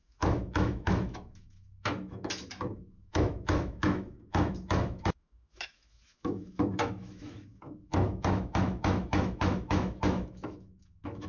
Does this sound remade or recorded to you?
remade